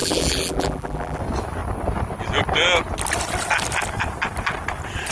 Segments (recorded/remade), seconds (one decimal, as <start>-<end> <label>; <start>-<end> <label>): 0.0-1.2 remade; 1.2-5.1 recorded